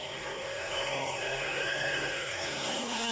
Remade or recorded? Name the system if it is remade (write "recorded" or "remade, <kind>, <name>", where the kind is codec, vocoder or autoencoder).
remade, codec, SNAC